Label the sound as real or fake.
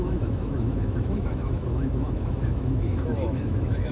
fake